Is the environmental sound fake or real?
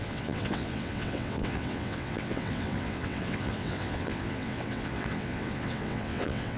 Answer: fake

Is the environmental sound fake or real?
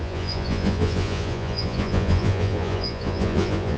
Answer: fake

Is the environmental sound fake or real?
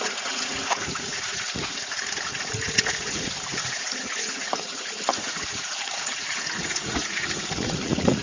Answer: fake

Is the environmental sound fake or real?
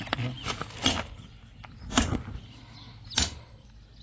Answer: real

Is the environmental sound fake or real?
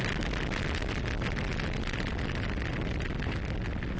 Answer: real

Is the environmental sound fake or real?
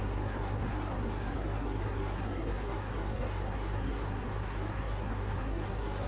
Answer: fake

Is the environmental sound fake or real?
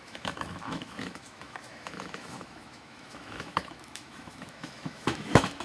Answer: fake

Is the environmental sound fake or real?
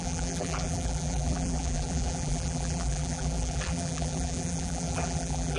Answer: fake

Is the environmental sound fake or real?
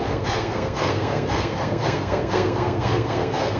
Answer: fake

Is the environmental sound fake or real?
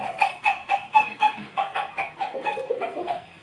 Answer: fake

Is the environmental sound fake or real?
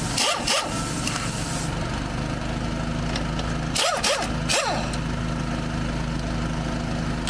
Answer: real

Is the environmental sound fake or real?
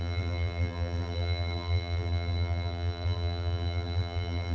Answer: fake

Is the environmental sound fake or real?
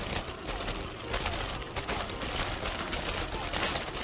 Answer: real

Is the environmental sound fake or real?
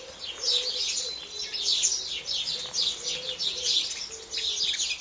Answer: real